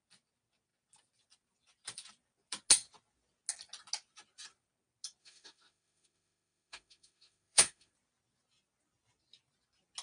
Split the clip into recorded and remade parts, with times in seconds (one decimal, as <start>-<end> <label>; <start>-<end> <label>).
0.0-5.2 recorded; 5.2-7.9 remade; 7.9-10.0 recorded